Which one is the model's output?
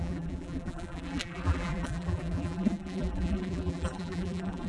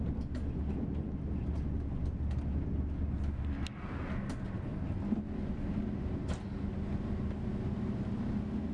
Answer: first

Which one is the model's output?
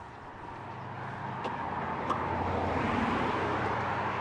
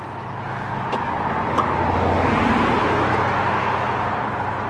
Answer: first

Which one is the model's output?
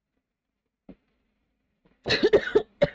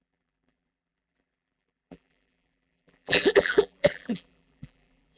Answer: second